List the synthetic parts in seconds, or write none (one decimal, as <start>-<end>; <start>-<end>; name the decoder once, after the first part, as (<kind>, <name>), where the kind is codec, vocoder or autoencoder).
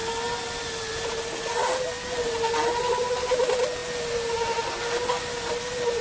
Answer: none